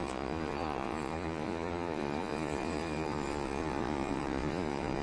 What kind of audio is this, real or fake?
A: fake